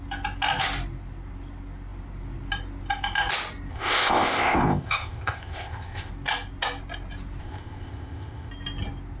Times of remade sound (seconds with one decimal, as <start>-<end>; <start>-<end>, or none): 3.7-6.1; 7.4-8.5